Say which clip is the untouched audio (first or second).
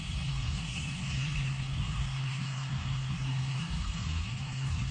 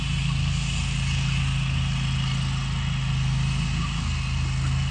second